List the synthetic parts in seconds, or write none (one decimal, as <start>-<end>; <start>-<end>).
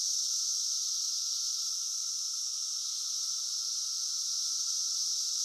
none